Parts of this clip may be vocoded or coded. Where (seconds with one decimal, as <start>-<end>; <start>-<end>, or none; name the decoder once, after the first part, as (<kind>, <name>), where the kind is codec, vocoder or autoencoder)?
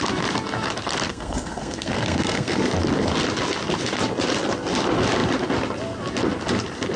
1.1-2.6 (codec, SNAC)